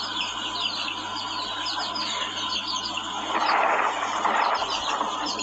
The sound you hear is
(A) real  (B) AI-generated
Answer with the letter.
A